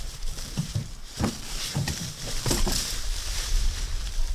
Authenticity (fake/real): fake